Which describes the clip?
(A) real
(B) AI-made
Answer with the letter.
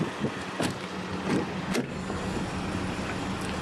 A